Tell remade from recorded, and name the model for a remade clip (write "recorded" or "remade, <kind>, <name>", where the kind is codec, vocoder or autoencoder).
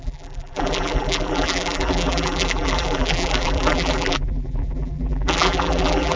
remade, vocoder, BigVGAN v2